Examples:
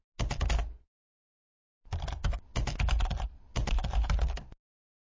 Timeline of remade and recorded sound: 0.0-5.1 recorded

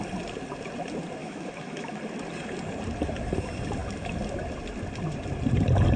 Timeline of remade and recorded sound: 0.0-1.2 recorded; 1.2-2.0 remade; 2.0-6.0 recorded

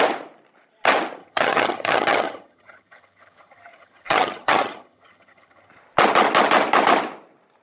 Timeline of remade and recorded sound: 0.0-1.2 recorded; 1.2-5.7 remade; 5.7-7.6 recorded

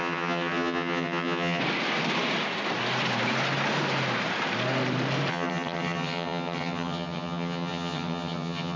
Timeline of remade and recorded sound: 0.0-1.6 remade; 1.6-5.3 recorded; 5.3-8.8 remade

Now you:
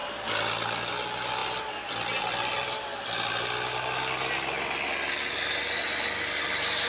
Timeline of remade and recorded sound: 0.0-6.9 recorded

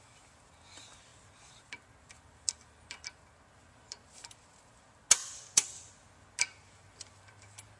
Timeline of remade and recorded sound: 0.0-7.8 recorded

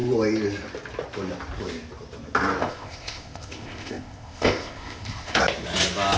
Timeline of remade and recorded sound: 0.0-2.6 recorded; 2.6-5.4 remade; 5.4-6.2 recorded

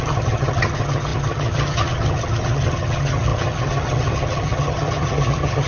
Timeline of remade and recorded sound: 0.0-5.7 remade